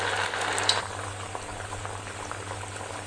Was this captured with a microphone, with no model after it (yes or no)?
yes